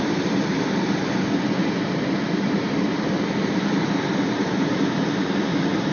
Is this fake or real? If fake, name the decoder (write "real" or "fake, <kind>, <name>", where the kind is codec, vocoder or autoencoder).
real